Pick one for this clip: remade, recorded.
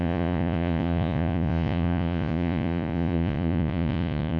remade